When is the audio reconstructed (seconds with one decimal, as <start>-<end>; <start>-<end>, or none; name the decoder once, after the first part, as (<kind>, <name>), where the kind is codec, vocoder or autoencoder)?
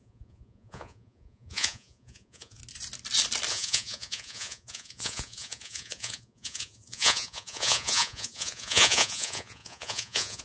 0.0-2.6 (vocoder, Vocos); 3.5-10.4